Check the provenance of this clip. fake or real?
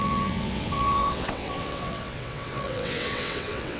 fake